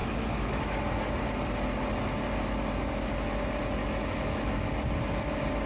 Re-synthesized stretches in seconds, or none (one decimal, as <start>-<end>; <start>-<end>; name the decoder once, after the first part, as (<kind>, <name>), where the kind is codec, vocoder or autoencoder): 0.0-0.8 (autoencoder, DAC-VAE); 3.8-4.7

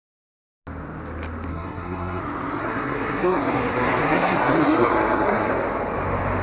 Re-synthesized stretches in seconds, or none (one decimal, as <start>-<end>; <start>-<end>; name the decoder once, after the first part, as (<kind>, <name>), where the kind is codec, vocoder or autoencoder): 1.5-2.2 (codec, SNAC); 2.6-5.5

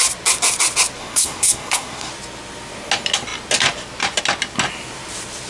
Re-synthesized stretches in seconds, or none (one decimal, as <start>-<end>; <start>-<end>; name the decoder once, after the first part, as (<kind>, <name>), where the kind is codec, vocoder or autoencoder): 1.0-2.1 (codec, SNAC)

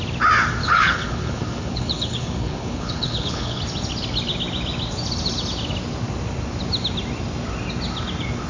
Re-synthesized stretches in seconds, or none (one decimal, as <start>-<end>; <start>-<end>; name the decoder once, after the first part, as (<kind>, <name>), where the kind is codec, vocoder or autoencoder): 0.6-3.6 (codec, HILCodec)

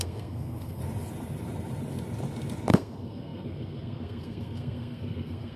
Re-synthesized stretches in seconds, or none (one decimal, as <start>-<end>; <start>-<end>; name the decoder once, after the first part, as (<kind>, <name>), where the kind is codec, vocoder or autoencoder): 0.0-0.8 (codec, SNAC); 2.7-5.6